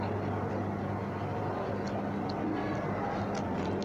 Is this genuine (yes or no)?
yes